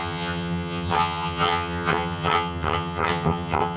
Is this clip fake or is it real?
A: fake